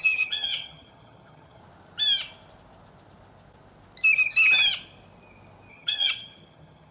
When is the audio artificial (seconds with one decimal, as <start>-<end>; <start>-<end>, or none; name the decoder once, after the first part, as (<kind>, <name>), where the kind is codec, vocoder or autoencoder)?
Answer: 0.0-1.6 (vocoder, HiFi-GAN); 5.7-6.9